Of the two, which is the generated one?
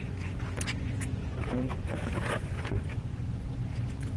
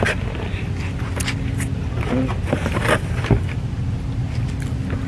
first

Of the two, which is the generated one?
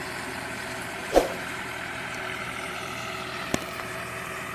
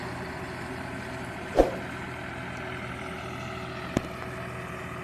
first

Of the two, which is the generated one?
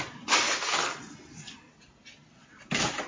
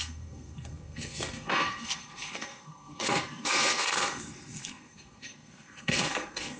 second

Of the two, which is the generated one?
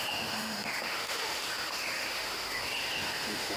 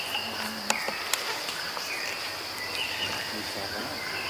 first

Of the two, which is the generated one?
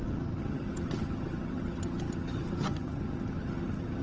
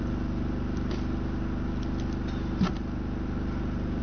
first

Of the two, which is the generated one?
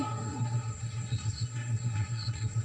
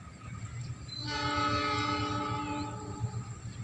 first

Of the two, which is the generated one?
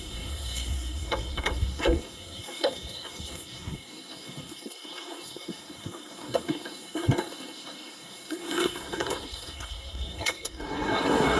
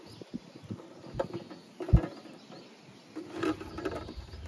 first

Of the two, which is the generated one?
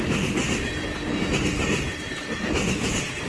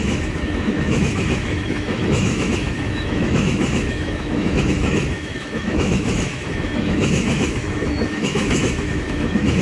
second